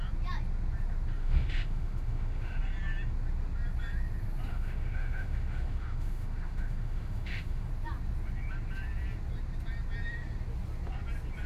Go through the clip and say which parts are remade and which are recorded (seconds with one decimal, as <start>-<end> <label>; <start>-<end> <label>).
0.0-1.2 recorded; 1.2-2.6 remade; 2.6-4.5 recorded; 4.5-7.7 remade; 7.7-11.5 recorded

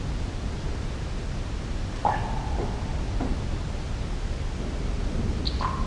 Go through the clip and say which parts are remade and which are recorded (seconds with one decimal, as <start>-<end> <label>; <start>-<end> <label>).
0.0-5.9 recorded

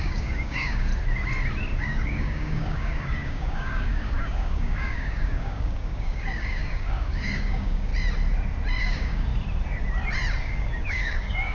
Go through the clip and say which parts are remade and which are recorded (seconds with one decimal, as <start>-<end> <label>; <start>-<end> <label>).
0.0-0.9 remade; 0.9-1.8 recorded; 1.8-7.9 remade; 7.9-8.8 recorded; 8.8-9.3 remade; 9.3-10.4 recorded; 10.4-11.5 remade

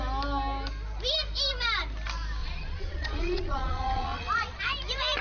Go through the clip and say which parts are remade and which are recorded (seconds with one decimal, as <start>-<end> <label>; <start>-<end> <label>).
0.0-2.4 recorded; 2.4-4.6 remade; 4.6-5.2 recorded